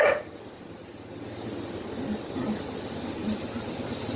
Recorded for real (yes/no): yes